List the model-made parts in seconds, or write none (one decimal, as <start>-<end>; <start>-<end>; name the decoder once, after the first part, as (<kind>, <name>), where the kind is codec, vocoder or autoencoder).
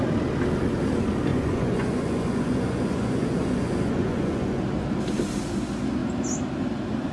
1.3-4.6 (vocoder, Vocos)